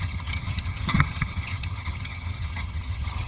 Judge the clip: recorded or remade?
remade